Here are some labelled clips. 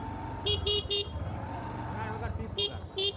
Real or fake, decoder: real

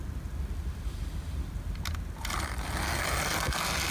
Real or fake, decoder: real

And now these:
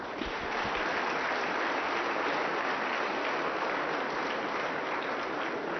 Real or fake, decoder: real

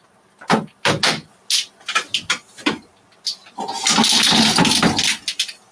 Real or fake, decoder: real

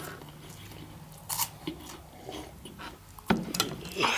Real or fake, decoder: real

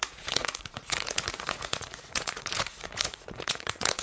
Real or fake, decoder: fake, vocoder, Vocos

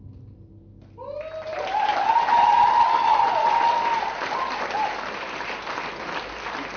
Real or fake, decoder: real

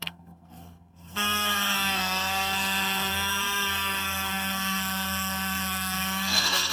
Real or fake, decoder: fake, codec, SNAC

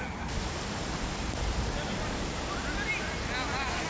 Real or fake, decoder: real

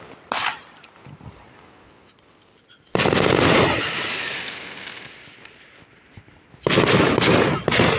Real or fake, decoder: real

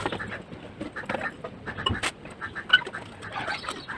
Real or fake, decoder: real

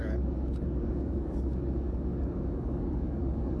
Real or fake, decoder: fake, codec, DAC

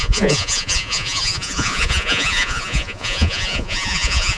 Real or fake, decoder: fake, vocoder, Vocos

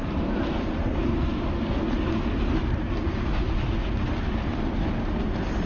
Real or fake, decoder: real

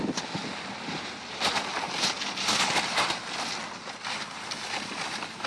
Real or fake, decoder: real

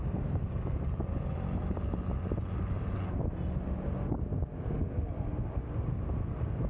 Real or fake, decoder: real